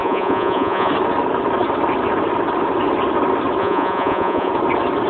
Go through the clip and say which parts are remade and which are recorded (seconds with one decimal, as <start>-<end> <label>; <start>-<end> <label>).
0.0-0.9 remade; 0.9-3.6 recorded; 3.6-4.5 remade; 4.5-5.1 recorded